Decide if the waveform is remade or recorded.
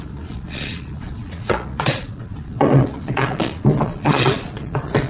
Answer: remade